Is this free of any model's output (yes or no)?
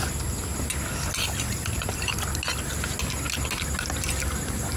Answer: yes